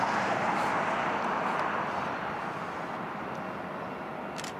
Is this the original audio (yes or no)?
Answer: yes